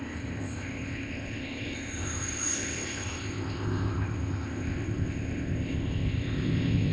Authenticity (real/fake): fake